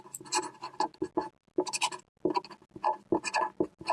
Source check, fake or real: real